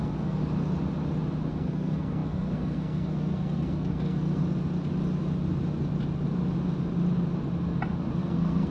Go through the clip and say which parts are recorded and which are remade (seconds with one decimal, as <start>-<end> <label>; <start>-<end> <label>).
0.0-0.4 remade; 0.4-1.5 recorded; 1.5-4.4 remade; 4.4-8.2 recorded; 8.2-8.7 remade